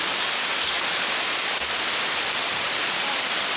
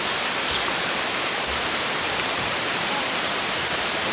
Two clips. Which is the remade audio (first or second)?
second